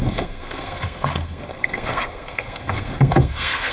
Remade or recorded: remade